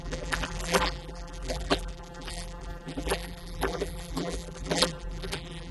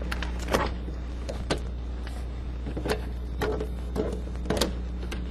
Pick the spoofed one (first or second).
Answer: first